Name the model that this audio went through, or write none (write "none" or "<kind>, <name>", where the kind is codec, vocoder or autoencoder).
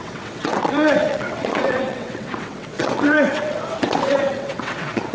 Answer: vocoder, WaveNeXt